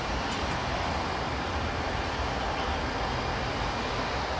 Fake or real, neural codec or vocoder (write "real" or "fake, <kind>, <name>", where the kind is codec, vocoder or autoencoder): real